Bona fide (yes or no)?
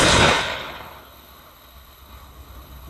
no